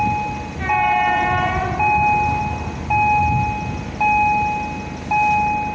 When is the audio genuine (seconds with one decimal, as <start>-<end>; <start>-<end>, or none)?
0.0-5.7